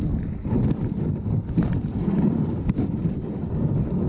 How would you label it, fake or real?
real